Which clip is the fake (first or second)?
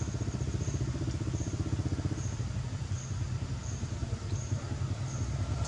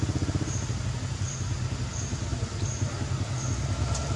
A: first